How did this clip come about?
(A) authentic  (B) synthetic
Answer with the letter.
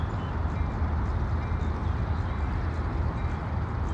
A